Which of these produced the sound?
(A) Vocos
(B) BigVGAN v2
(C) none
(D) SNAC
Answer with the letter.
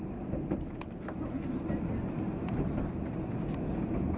C